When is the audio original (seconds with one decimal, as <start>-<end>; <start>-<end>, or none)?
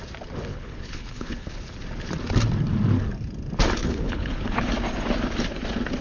0.0-0.5; 1.6-3.8; 4.7-6.0